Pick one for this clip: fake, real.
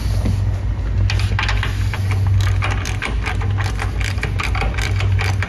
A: real